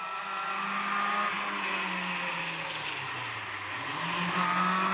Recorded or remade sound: recorded